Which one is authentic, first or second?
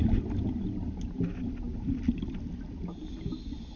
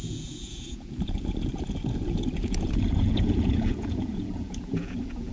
first